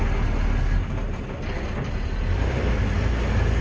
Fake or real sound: real